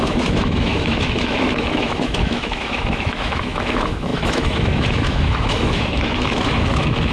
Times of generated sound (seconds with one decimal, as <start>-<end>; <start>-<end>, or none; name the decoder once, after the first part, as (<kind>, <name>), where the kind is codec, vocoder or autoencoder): 0.0-7.1 (autoencoder, DAC-VAE)